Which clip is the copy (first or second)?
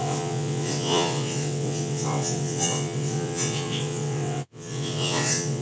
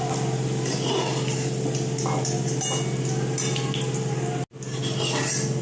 first